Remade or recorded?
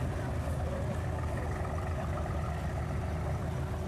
recorded